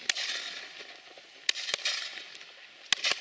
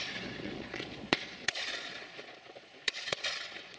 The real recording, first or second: first